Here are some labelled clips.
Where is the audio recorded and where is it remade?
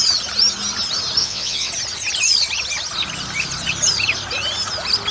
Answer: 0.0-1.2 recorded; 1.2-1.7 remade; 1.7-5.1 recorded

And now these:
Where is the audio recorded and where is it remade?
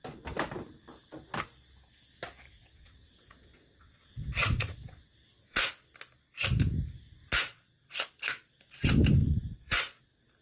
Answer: 0.0-2.5 recorded; 2.5-5.7 remade; 5.7-7.4 recorded; 7.4-7.9 remade; 7.9-9.2 recorded; 9.2-10.0 remade; 10.0-10.4 recorded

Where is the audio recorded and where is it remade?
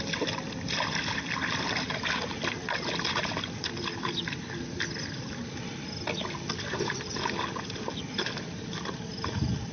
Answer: 0.0-9.7 recorded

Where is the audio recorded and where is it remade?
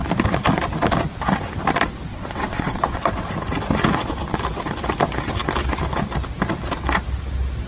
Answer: 0.0-2.1 recorded; 2.1-3.1 remade; 3.1-7.7 recorded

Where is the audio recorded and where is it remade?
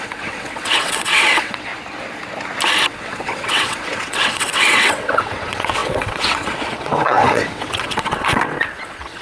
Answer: 0.0-1.7 remade; 1.7-2.9 recorded; 2.9-9.2 remade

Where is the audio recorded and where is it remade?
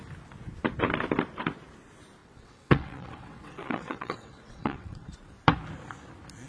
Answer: 0.0-2.2 recorded; 2.2-5.1 remade; 5.1-6.5 recorded